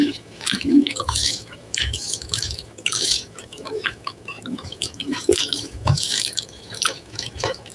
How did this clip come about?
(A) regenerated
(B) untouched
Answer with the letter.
A